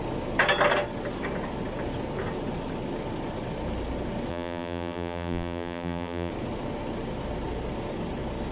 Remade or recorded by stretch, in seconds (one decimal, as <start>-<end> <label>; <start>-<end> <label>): 0.0-4.3 recorded; 4.3-6.3 remade; 6.3-8.5 recorded